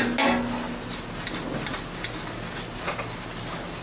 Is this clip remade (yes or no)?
no